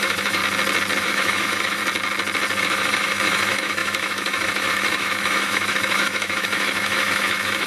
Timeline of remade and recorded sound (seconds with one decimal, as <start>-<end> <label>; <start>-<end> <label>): 0.0-0.4 remade; 0.4-1.0 recorded; 1.0-1.8 remade; 1.8-2.6 recorded; 2.6-7.7 remade